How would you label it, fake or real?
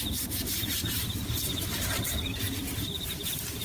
fake